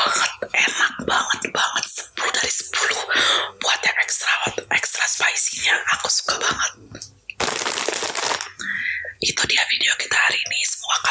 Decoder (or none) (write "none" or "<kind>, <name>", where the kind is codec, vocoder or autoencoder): none